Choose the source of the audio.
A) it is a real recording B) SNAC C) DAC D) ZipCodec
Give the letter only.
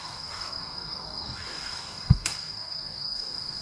C